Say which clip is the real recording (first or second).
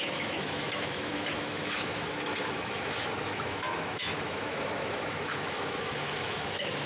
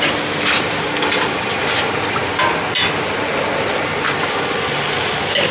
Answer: second